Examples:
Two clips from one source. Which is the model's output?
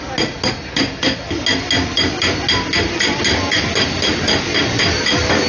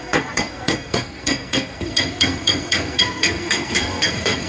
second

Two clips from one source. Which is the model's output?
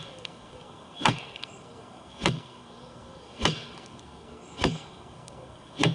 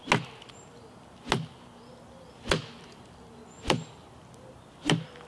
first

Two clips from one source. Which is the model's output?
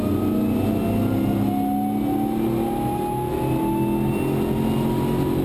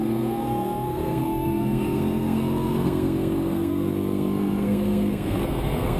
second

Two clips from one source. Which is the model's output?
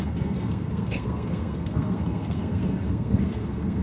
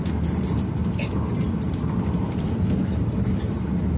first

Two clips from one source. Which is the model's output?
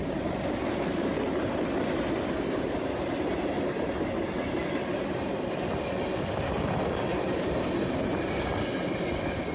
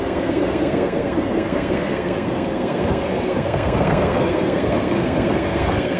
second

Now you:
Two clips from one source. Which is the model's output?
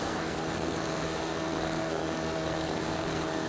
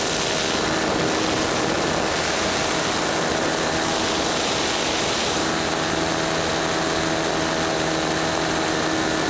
first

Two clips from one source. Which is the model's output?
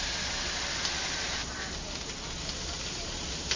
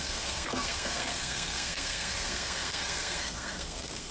second